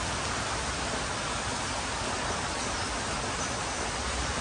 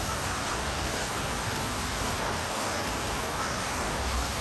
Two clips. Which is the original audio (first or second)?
first